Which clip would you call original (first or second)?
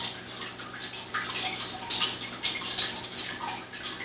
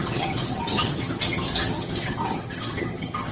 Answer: first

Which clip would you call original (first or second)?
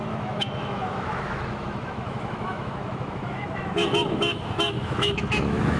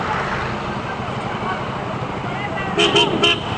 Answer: second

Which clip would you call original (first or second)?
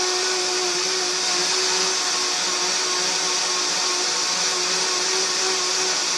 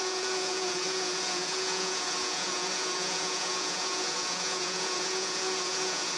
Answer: first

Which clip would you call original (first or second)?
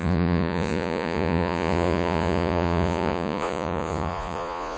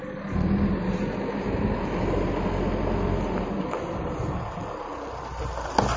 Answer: second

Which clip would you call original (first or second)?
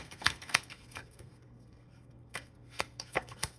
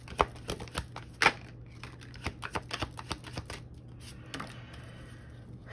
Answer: second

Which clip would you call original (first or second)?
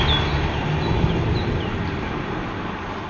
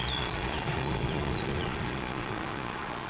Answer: first